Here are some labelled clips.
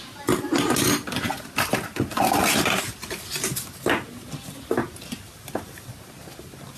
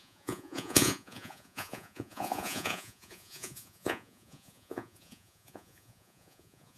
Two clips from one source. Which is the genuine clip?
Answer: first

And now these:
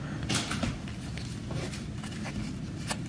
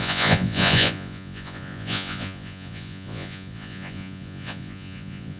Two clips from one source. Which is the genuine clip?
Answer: first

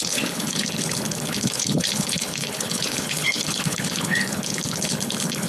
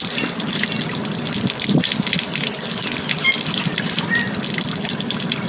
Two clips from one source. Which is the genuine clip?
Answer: second